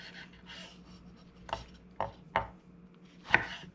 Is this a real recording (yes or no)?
yes